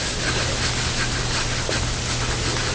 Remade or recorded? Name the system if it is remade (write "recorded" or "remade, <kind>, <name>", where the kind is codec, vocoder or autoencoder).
recorded